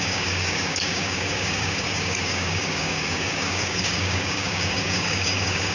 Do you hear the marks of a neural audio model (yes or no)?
yes